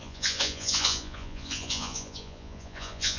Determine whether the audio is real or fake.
fake